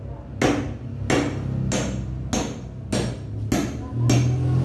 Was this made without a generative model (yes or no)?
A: yes